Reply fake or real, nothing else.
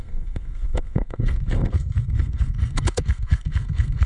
fake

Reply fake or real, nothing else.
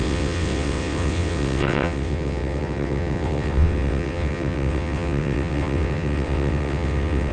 fake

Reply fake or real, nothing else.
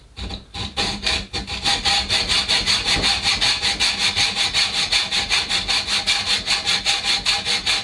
real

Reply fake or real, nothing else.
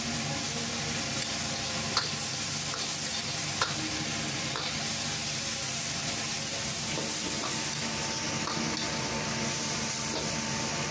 real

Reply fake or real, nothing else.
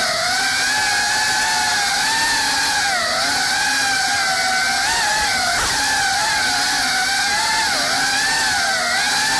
real